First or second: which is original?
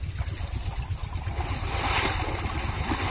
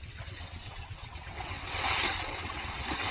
first